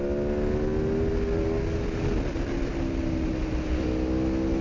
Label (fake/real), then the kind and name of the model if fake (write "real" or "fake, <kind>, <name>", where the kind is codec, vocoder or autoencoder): real